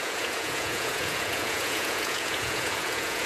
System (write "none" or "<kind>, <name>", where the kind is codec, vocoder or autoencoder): vocoder, Vocos